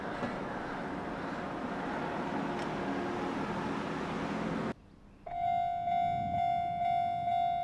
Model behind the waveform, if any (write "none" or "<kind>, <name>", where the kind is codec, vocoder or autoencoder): none